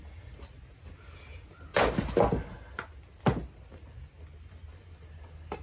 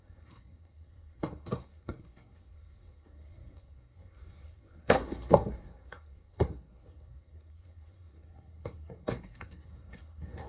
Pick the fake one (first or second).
second